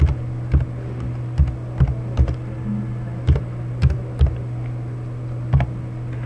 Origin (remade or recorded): recorded